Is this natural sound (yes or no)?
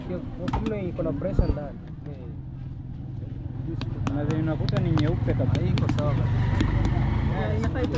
yes